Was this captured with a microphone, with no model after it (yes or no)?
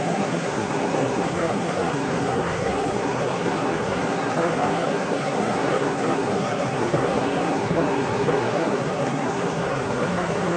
no